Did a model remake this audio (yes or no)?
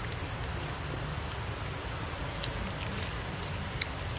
no